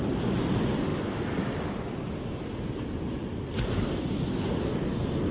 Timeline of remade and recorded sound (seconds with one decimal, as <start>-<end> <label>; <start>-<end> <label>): 0.0-5.3 recorded